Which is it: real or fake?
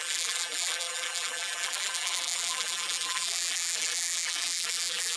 fake